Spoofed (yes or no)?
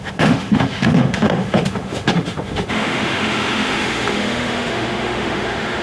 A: yes